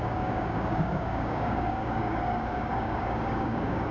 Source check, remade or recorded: remade